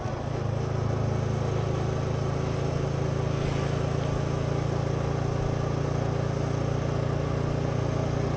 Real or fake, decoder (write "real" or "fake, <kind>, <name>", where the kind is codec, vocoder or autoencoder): real